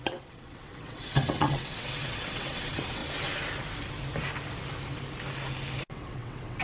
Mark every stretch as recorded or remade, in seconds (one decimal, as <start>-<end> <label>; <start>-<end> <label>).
0.0-3.0 remade; 3.0-5.8 recorded; 5.8-6.6 remade